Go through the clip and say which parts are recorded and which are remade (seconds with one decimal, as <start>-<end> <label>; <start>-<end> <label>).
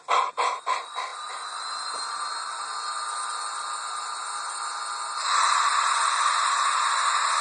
0.0-7.4 recorded